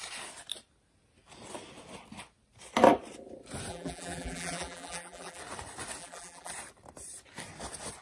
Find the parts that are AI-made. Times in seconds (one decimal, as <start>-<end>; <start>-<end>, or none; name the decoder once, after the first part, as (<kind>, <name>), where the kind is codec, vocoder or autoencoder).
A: 3.7-5.4 (vocoder, BigVGAN v2); 6.0-6.5